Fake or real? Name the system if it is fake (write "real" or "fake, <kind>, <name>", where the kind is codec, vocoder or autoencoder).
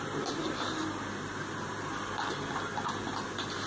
real